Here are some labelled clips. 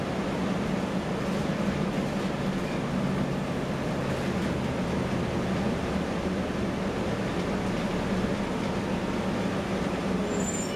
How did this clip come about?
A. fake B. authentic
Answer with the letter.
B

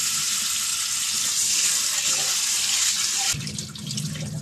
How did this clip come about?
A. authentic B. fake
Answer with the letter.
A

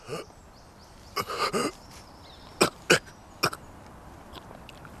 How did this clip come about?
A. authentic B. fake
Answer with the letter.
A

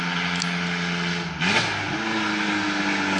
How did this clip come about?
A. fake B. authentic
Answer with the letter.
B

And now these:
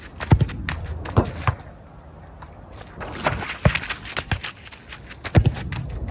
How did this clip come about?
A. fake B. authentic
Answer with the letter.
B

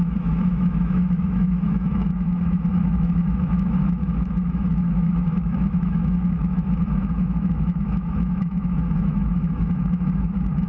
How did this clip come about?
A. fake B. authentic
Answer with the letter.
A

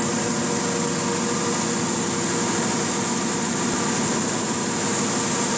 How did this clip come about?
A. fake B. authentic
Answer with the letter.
B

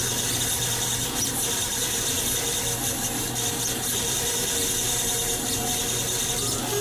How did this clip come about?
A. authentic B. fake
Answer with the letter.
A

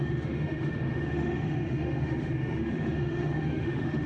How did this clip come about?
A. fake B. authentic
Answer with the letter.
A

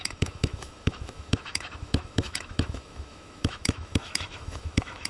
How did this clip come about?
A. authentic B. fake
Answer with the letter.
B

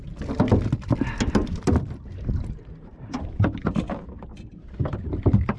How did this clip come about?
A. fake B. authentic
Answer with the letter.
B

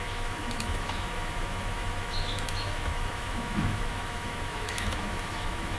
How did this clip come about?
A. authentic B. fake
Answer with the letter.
B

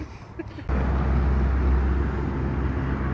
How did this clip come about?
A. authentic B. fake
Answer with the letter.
A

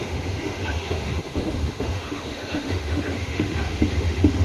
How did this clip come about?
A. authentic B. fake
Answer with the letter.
B